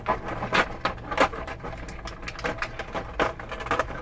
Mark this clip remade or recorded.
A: recorded